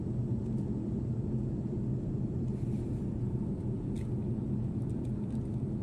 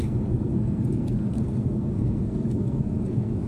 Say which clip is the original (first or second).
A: first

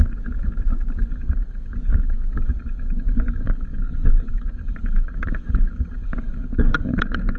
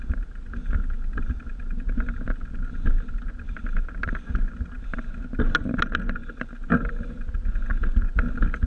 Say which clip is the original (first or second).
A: second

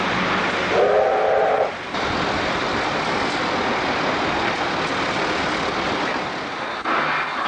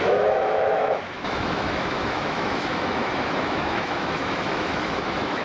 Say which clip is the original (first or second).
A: first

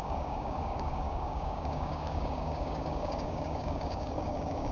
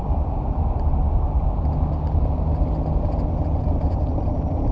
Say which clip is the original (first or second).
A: second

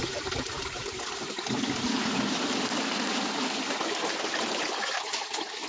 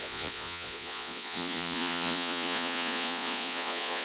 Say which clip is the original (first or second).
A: first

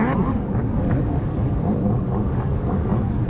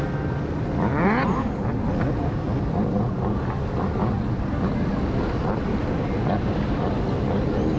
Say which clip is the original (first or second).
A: second